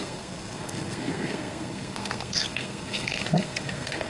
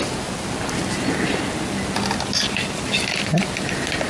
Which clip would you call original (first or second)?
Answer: second